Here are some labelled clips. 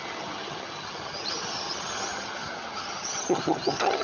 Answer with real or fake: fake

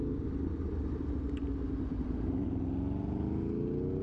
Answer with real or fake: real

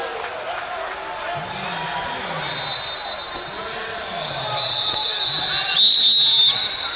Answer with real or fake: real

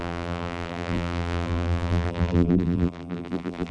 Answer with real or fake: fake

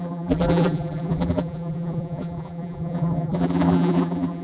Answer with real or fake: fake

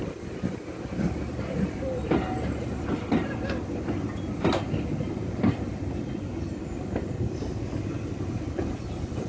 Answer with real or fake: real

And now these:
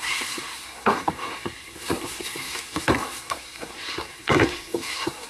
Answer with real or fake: fake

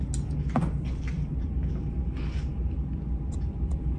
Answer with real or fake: real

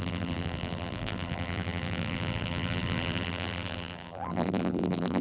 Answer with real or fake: fake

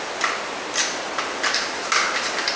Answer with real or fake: fake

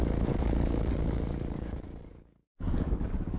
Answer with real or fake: fake